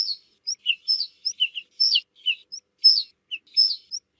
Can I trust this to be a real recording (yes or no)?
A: yes